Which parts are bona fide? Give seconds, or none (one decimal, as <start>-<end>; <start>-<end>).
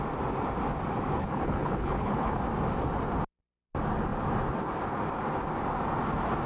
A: 0.0-1.2; 2.4-6.5